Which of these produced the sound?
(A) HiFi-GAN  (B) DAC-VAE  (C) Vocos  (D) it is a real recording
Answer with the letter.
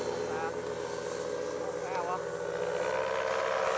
D